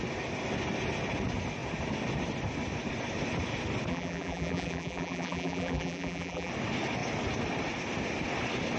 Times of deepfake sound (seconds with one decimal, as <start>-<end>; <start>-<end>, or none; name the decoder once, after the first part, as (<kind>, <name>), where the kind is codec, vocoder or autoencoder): 3.9-6.5 (vocoder, BigVGAN v2)